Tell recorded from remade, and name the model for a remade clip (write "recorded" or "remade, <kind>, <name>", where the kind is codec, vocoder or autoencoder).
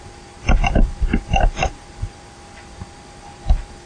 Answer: remade, vocoder, BigVGAN v2